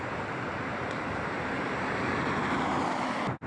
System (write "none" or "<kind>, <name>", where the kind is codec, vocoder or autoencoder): none